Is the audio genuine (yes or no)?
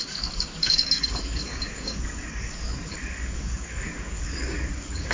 no